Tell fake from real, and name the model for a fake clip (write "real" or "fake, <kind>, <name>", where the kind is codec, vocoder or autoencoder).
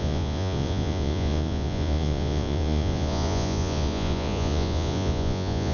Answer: fake, vocoder, Vocos